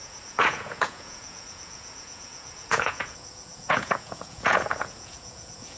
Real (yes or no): no